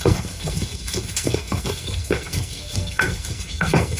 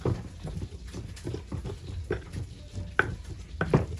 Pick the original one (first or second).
second